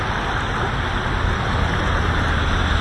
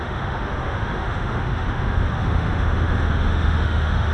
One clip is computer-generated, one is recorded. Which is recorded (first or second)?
first